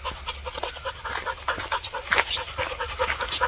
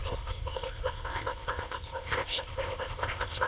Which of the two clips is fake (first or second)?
second